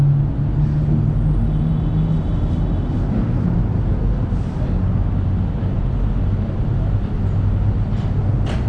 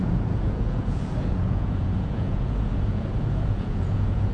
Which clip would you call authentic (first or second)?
first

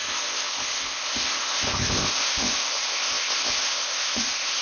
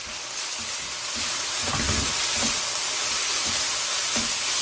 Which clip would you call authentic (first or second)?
second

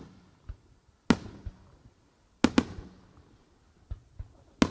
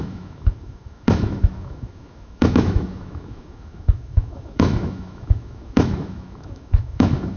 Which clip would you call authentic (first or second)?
first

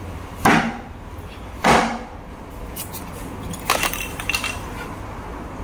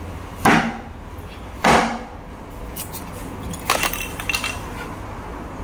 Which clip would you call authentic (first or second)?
second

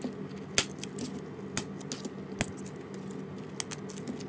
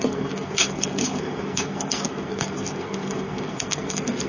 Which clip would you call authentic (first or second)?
first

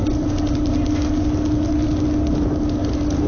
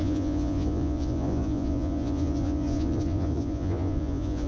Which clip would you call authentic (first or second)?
first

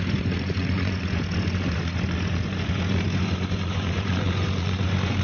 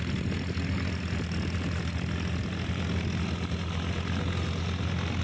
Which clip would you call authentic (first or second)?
second